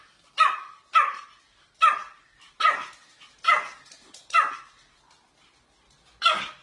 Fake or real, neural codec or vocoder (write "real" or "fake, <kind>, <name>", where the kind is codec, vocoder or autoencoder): real